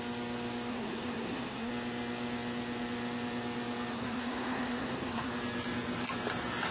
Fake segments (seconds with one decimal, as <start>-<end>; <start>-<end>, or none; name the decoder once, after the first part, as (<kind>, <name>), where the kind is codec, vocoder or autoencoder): 0.7-1.7 (codec, SNAC); 3.9-5.3